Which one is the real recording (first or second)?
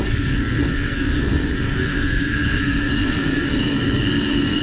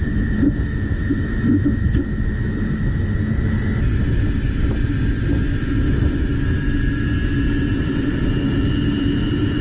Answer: second